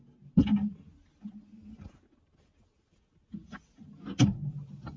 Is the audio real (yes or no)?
yes